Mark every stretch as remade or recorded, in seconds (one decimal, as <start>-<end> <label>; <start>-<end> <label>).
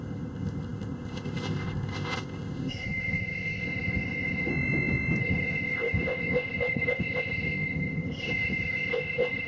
0.0-4.5 remade; 4.5-5.2 recorded; 5.2-9.5 remade